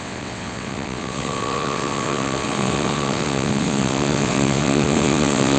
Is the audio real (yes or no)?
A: no